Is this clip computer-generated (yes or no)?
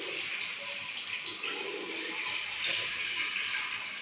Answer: no